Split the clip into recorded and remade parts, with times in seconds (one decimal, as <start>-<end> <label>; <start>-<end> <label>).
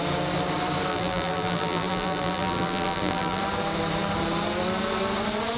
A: 0.0-0.9 recorded; 0.9-3.4 remade; 3.4-5.6 recorded